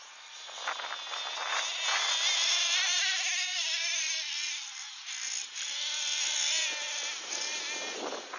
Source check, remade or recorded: recorded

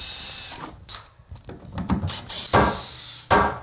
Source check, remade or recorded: recorded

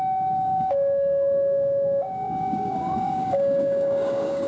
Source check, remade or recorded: remade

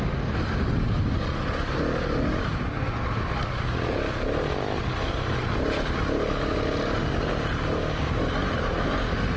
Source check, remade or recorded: recorded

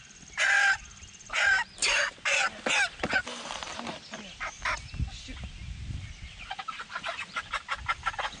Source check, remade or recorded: recorded